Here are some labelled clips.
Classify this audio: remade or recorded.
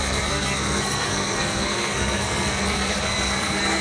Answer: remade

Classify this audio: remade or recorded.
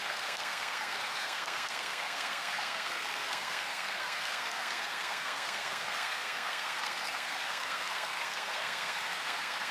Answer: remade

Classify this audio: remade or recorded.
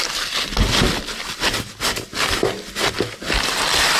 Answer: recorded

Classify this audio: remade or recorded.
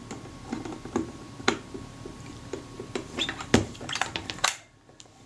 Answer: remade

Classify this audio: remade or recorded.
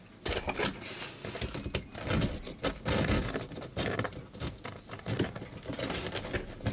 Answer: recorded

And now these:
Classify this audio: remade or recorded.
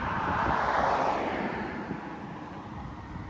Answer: recorded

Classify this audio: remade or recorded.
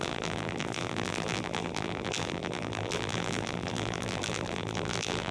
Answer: remade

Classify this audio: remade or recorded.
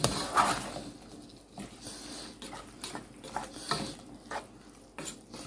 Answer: recorded